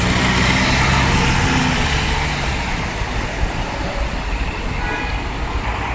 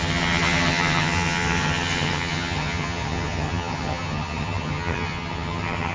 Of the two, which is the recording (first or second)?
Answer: first